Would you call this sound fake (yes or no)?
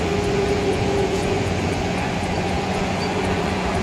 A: yes